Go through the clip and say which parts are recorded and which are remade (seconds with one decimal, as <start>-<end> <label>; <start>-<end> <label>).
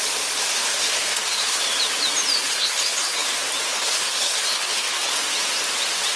0.0-0.6 recorded; 0.6-1.6 remade; 1.6-2.4 recorded; 2.4-3.3 remade; 3.3-3.7 recorded; 3.7-5.1 remade; 5.1-6.2 recorded